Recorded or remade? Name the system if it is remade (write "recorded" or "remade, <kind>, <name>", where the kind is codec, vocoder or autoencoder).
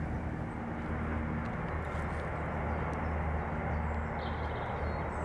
recorded